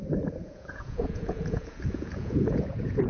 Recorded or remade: remade